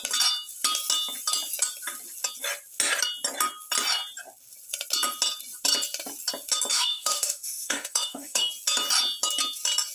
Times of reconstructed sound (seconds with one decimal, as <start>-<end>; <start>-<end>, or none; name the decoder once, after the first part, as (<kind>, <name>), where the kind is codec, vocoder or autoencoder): 6.7-8.5 (autoencoder, DAC-VAE)

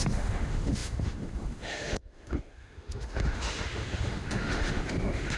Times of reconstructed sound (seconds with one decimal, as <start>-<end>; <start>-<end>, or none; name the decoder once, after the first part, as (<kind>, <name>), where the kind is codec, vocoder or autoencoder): 0.0-5.4 (autoencoder, DAC-VAE)

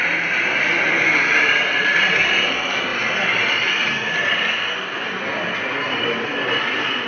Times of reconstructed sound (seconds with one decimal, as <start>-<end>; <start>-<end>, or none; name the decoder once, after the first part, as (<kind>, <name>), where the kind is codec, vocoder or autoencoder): none

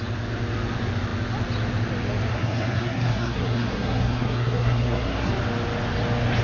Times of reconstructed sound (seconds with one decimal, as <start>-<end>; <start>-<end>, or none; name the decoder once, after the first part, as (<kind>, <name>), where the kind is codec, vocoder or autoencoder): 2.3-5.3 (codec, SNAC)